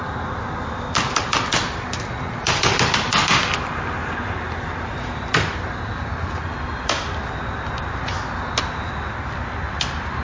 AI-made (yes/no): no